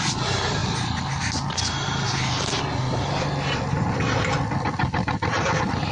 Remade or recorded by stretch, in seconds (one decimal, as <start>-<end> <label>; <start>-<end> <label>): 0.0-5.9 recorded